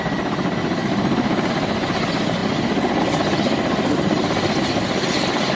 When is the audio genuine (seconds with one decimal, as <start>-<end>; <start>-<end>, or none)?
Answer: 0.0-0.8; 1.5-5.5